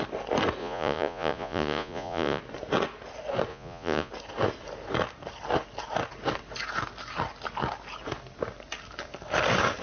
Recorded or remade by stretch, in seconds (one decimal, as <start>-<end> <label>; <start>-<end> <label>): 0.0-0.6 recorded; 0.6-2.4 remade; 2.4-3.5 recorded; 3.5-4.1 remade; 4.1-9.8 recorded